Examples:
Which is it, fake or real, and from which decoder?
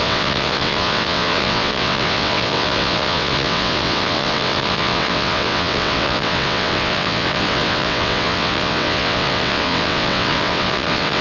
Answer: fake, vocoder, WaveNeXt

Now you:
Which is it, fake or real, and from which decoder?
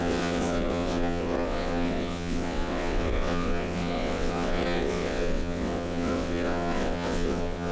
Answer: fake, vocoder, WaveNeXt